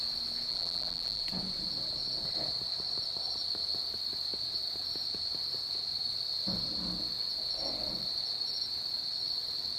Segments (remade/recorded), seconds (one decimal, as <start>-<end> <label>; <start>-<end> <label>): 0.0-0.5 recorded; 0.5-1.2 remade; 1.2-9.8 recorded